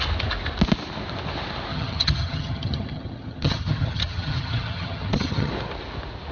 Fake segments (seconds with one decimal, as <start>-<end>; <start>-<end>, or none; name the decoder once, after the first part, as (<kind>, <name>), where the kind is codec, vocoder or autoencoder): 1.7-5.5 (vocoder, HiFi-GAN)